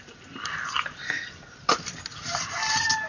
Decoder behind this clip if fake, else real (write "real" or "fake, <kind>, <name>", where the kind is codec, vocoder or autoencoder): real